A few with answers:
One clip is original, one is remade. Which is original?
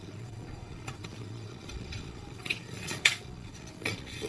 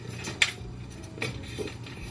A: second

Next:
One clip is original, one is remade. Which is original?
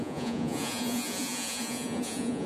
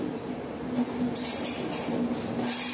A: second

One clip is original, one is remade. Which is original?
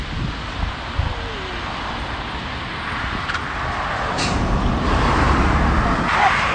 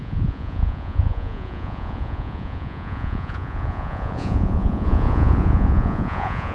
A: first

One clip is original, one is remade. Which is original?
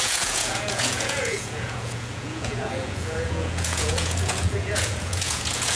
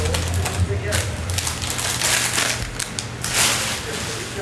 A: second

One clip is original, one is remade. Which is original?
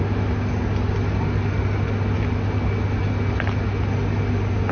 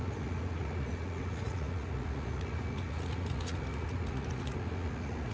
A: first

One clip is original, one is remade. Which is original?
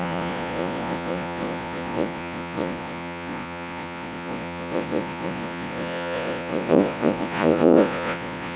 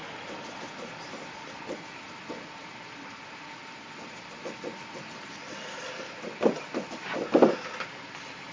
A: second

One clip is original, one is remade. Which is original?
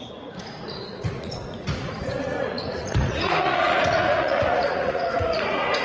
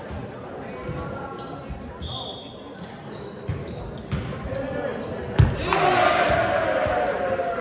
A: second